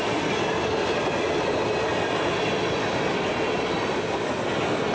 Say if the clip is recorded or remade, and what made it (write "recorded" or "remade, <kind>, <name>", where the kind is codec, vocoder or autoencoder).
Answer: recorded